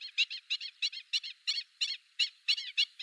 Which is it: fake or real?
fake